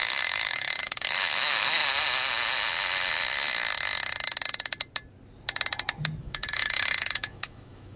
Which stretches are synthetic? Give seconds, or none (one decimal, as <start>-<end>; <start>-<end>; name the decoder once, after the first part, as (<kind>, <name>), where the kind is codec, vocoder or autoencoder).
0.0-1.8 (autoencoder, DAC-VAE); 6.2-8.0